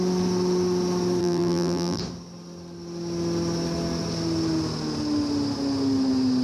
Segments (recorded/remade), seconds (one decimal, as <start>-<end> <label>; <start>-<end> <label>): 0.0-1.2 recorded; 1.2-2.0 remade; 2.0-6.4 recorded